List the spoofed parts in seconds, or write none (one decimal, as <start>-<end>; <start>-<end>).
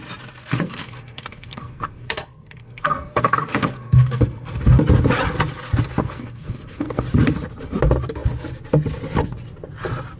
0.4-4.6; 6.0-7.0